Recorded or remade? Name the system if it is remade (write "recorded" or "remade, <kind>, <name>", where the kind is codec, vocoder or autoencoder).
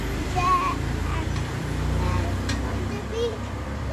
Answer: remade, vocoder, BigVGAN v2